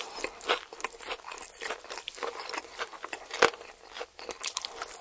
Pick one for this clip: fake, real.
fake